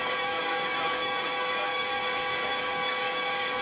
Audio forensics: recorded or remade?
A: remade